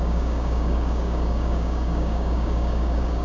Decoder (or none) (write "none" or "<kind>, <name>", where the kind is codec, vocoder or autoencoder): codec, DAC